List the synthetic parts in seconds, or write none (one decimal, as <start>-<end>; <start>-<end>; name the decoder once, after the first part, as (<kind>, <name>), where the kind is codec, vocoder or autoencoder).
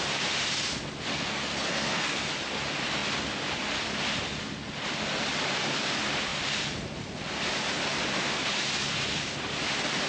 1.1-2.3 (codec, SNAC)